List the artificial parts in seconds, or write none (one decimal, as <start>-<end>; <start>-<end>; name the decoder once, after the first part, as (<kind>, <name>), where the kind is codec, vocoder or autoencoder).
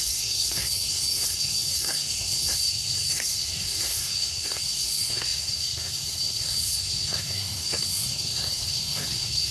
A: 0.0-9.5 (codec, SNAC)